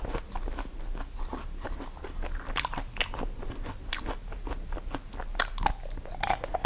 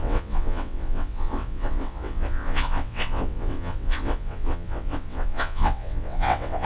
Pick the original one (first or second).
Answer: first